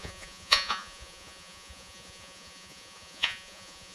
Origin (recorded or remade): remade